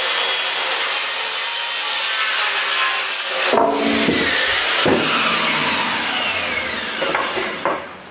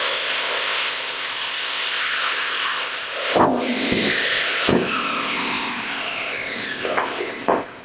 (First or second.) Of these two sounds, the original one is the first